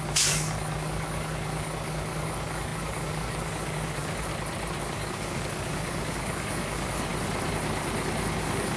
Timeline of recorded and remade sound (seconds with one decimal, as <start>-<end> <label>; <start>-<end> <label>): 0.0-4.3 remade; 4.3-4.8 recorded; 4.8-7.1 remade; 7.1-8.4 recorded; 8.4-8.8 remade